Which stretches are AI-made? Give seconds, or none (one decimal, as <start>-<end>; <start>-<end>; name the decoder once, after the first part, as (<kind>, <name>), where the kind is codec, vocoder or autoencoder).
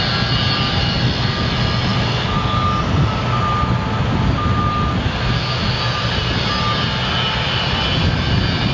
none